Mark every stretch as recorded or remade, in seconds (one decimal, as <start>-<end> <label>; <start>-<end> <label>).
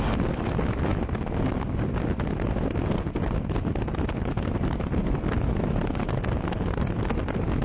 0.0-7.6 recorded